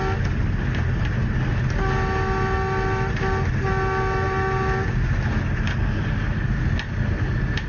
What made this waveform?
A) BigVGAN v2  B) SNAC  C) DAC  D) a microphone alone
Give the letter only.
D